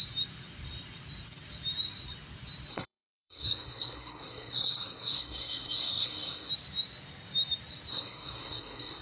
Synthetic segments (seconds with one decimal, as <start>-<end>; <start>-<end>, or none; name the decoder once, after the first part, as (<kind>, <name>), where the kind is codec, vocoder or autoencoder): 2.7-6.5 (codec, SNAC); 7.9-9.0